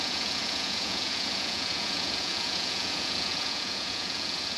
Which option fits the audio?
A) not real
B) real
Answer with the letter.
A